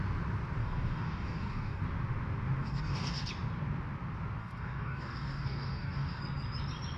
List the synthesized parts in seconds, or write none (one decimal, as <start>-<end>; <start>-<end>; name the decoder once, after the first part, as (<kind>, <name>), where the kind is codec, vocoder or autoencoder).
0.6-1.8 (codec, DAC); 2.6-3.3; 4.4-6.2